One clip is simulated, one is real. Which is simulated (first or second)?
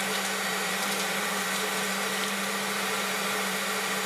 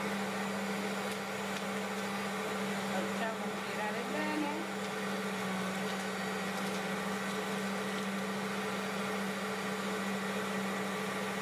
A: first